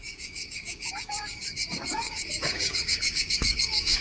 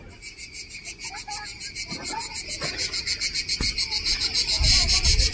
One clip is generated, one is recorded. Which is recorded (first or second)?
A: second